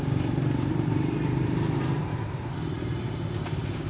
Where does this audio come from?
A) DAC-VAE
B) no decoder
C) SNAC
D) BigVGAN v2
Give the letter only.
D